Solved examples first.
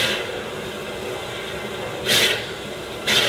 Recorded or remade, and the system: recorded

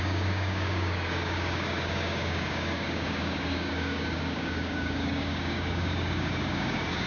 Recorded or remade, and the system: remade, codec, DAC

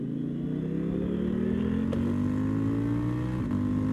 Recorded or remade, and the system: recorded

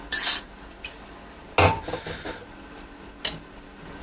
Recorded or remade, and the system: recorded